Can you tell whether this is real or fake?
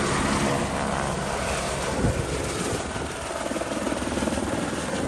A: real